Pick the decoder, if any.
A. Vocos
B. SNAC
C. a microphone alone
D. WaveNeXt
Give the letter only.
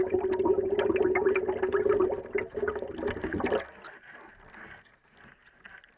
C